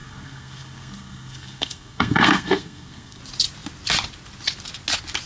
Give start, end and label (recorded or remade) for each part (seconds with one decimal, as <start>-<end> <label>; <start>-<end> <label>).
0.0-3.2 remade; 3.2-5.3 recorded